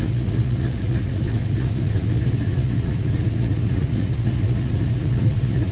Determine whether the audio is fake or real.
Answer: fake